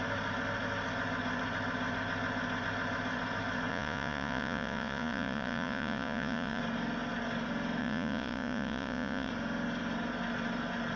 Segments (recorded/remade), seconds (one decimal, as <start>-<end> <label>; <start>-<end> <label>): 0.0-3.7 recorded; 3.7-6.6 remade; 6.6-7.8 recorded; 7.8-9.3 remade; 9.3-11.0 recorded